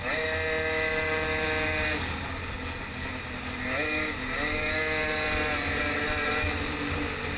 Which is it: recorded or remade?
recorded